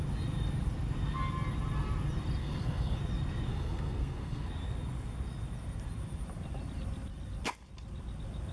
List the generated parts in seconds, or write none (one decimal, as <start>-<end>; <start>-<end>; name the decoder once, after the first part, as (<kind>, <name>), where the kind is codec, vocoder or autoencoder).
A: 2.4-3.0 (codec, SNAC); 3.5-4.5